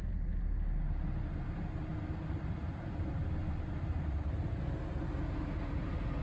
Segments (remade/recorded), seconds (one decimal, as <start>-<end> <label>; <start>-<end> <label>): 0.0-6.2 recorded